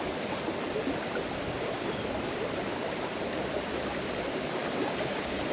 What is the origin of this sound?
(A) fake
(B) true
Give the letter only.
B